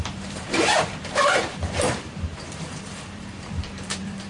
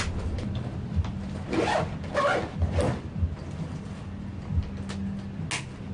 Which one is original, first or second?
second